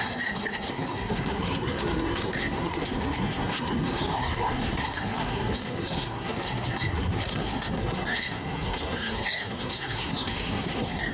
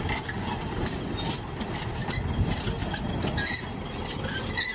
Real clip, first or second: second